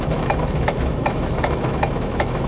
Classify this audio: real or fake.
fake